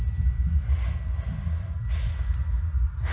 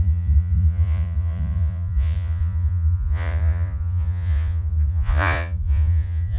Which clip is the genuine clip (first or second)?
first